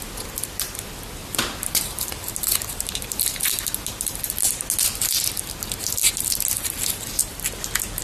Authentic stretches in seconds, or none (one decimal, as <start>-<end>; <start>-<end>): 0.0-1.2; 4.2-8.0